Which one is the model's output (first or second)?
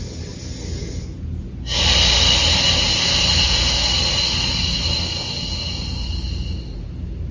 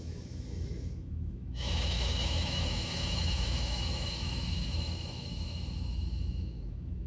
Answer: second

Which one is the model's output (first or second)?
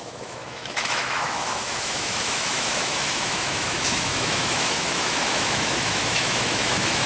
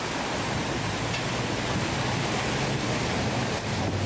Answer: first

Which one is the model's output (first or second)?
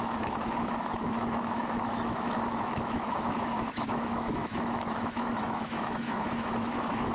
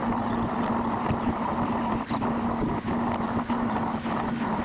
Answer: first